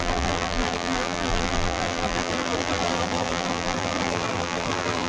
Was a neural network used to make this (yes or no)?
yes